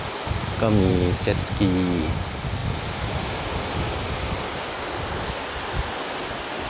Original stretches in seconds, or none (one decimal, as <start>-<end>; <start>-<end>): 0.0-6.7